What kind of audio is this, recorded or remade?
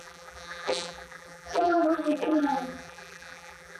remade